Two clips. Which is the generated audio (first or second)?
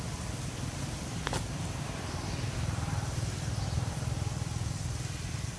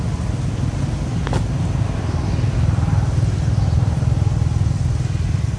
first